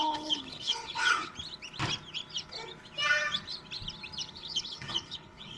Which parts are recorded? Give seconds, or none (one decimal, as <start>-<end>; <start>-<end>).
1.3-4.3